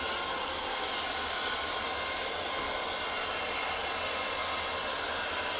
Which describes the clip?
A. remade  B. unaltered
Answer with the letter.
B